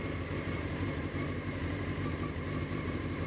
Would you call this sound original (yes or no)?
no